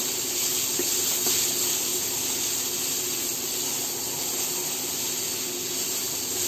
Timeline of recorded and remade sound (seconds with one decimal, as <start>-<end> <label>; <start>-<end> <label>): 0.0-6.5 recorded